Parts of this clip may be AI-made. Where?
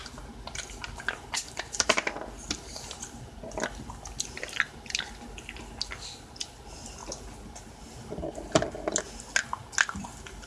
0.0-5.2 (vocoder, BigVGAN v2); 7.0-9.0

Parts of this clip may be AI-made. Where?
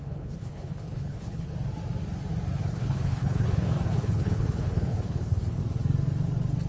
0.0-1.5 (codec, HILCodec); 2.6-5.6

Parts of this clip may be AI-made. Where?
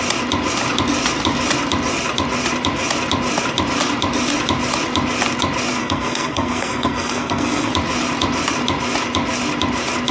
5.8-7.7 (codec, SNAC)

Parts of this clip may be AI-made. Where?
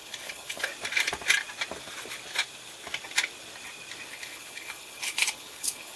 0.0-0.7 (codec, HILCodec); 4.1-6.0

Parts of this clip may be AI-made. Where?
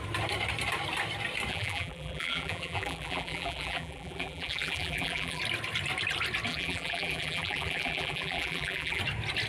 1.5-5.4 (vocoder, BigVGAN v2); 6.5-9.0